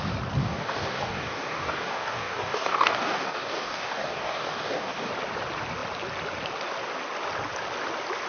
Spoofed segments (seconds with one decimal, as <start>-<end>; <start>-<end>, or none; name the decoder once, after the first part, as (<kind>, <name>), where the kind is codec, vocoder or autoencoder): 0.4-5.1 (codec, DAC)